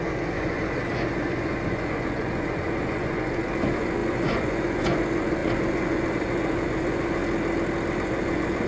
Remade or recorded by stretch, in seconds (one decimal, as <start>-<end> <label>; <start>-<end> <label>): 0.0-7.2 remade; 7.2-7.9 recorded; 7.9-8.7 remade